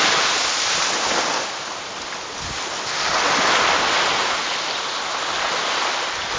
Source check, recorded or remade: recorded